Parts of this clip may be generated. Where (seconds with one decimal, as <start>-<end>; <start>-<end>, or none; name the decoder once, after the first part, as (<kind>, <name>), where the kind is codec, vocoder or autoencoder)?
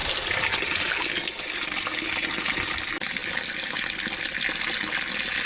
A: none